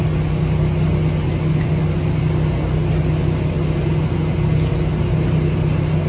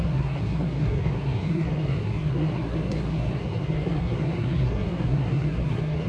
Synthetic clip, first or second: second